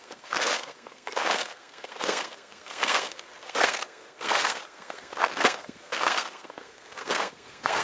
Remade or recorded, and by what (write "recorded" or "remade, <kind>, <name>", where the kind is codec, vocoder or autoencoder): remade, codec, SNAC